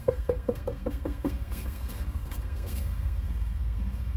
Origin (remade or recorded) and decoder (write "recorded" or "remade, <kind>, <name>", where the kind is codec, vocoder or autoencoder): remade, codec, SNAC